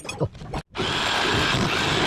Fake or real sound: real